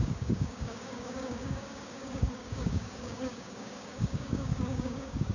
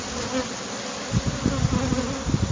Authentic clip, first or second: second